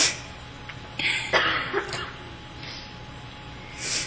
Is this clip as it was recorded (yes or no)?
yes